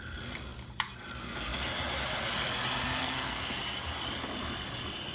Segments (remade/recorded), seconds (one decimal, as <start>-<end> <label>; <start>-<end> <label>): 0.0-3.0 recorded; 3.0-3.6 remade; 3.6-5.1 recorded